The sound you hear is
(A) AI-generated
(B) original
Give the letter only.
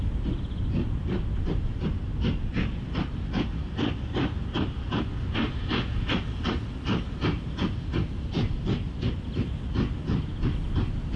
B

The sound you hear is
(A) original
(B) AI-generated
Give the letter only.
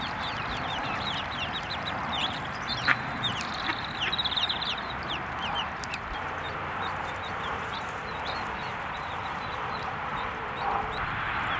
B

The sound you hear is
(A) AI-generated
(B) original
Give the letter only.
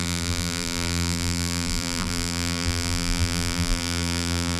A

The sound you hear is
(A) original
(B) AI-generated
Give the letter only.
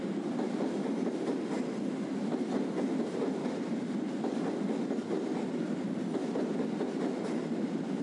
A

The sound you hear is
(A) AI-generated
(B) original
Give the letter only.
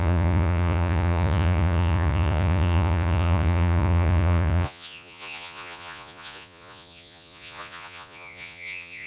A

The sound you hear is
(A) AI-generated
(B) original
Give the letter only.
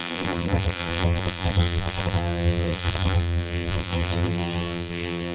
A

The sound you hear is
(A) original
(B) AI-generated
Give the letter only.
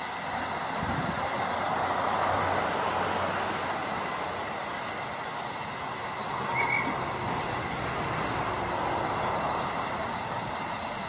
A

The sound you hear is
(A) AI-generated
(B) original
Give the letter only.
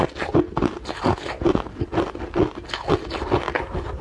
B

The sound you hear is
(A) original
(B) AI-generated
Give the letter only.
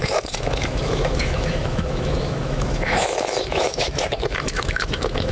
B